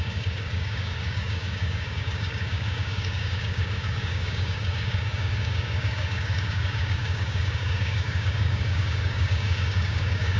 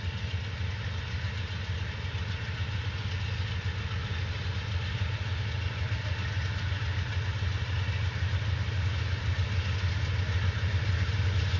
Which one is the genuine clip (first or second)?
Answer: second